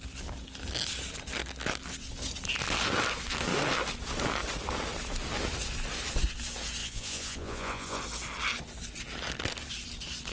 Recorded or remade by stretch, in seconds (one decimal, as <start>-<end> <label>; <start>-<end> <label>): 0.0-6.8 recorded; 6.8-8.0 remade; 8.0-10.3 recorded

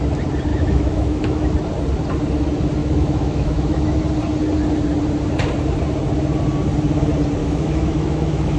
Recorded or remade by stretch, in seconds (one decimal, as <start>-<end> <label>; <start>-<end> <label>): 0.0-0.5 recorded; 0.5-1.5 remade; 1.5-2.8 recorded; 2.8-4.0 remade; 4.0-7.4 recorded; 7.4-8.6 remade